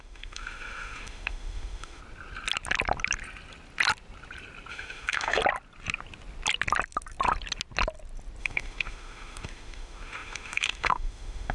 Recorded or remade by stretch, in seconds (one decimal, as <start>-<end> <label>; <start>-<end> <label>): 0.0-2.0 remade; 2.0-4.7 recorded; 4.7-5.4 remade; 5.4-8.4 recorded; 8.4-11.5 remade